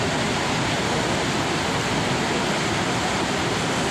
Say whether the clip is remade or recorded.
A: recorded